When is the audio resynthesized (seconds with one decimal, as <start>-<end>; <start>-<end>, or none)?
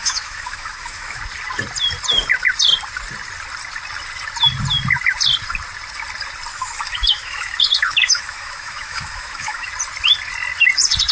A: 0.0-1.2; 6.5-9.7